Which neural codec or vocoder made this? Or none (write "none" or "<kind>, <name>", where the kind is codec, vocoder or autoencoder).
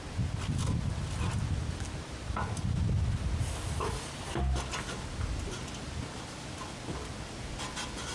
none